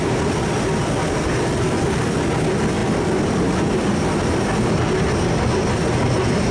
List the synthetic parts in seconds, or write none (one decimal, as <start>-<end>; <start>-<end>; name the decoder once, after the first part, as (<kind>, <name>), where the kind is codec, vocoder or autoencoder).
none